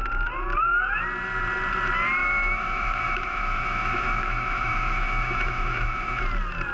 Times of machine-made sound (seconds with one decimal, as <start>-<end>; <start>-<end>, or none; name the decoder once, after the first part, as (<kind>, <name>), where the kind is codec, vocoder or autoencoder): 2.2-6.2 (autoencoder, DAC-VAE)